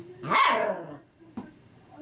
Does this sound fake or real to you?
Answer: real